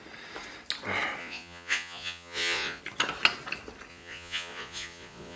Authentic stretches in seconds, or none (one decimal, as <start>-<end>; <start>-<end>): 0.0-1.2; 2.8-3.9